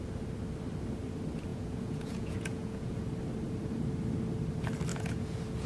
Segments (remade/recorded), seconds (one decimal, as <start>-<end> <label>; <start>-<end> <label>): 0.0-1.5 recorded; 1.5-3.0 remade; 3.0-4.9 recorded; 4.9-5.7 remade